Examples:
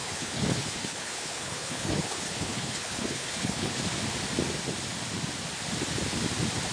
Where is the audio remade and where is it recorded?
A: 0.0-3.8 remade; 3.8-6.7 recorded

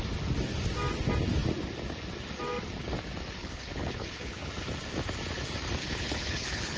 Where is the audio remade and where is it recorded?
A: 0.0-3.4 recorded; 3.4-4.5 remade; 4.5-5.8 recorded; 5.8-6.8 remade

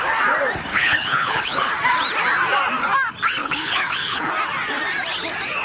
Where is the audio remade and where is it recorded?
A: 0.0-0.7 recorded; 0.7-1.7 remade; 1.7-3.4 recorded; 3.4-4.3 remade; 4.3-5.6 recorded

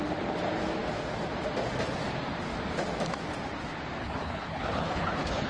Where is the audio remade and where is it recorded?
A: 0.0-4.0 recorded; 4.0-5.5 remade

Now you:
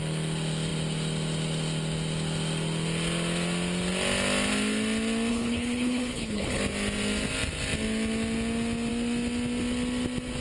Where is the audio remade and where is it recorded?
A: 0.0-5.3 recorded; 5.3-6.6 remade; 6.6-10.4 recorded

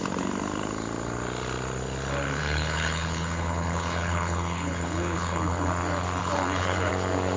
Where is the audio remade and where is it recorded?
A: 0.0-2.4 recorded; 2.4-5.7 remade; 5.7-6.2 recorded; 6.2-6.9 remade; 6.9-7.4 recorded

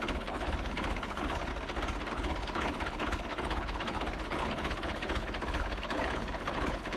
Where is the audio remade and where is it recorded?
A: 0.0-1.5 remade; 1.5-2.1 recorded; 2.1-7.0 remade